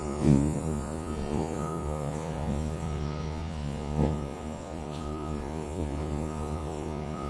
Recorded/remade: remade